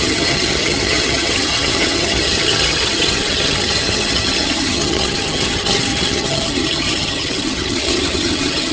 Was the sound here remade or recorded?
remade